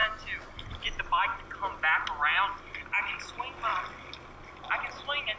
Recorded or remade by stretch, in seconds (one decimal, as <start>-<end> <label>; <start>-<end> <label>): 0.0-5.4 recorded